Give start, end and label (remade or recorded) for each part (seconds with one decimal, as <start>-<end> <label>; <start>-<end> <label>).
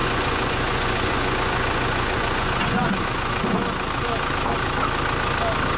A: 0.0-3.6 remade; 3.6-5.8 recorded